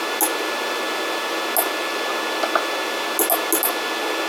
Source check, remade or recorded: recorded